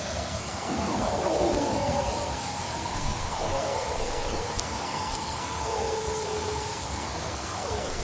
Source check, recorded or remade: remade